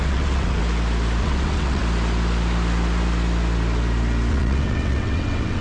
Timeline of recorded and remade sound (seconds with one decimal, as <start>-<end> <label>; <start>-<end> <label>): 0.0-0.6 remade; 0.6-1.2 recorded; 1.2-1.8 remade; 1.8-4.3 recorded; 4.3-5.6 remade